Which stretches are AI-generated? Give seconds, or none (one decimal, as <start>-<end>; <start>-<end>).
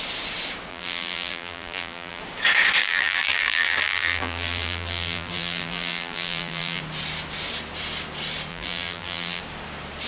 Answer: 0.7-2.2; 2.8-6.8; 8.5-9.4